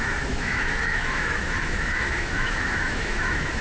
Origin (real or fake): fake